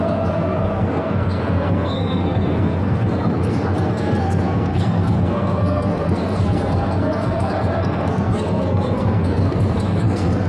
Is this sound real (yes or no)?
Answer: no